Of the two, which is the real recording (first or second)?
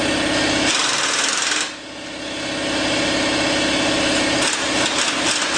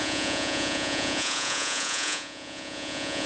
first